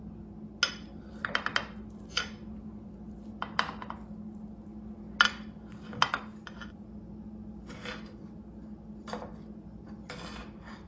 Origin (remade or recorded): recorded